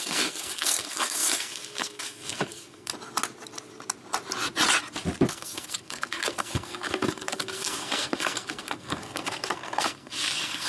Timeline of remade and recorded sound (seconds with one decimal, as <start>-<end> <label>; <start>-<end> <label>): 0.0-2.9 remade; 2.9-5.3 recorded; 5.3-10.7 remade